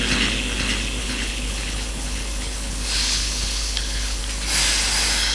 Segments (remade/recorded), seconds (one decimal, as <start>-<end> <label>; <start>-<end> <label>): 0.0-1.0 recorded; 1.0-4.2 remade; 4.2-5.3 recorded